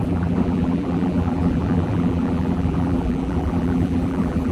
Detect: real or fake fake